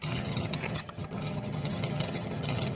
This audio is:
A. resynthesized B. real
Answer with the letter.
A